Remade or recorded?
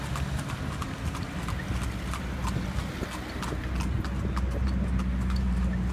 recorded